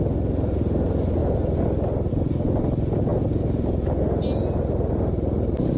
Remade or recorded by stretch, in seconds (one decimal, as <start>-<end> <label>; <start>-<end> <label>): 0.0-5.8 recorded